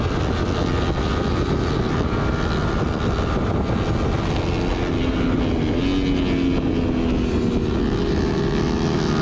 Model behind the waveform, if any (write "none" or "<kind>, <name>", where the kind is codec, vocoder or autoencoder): none